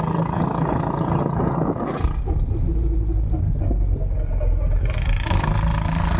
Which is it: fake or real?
real